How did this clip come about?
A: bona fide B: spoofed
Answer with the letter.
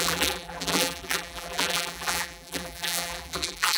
B